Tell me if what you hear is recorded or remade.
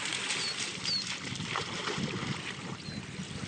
recorded